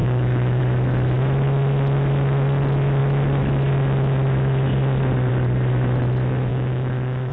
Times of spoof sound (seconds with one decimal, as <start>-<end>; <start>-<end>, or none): 0.0-0.6; 6.5-7.3